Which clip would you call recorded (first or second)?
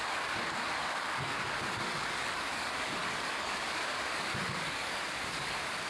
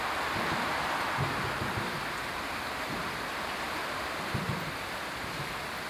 second